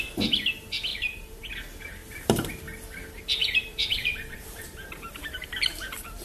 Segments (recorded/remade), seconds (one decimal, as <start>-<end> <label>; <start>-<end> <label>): 0.0-0.9 recorded; 0.9-1.5 remade; 1.5-2.0 recorded; 2.0-2.5 remade; 2.5-3.4 recorded; 3.4-6.2 remade